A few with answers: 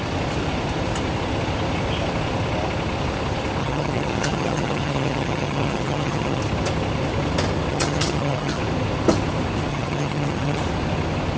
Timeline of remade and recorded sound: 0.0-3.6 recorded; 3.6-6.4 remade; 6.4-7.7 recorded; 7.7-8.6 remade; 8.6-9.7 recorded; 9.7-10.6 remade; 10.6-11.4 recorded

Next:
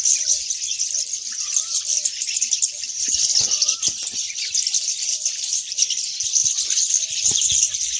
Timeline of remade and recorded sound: 0.0-8.0 recorded